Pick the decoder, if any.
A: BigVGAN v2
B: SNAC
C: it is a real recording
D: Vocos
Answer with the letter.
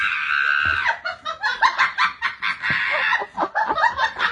C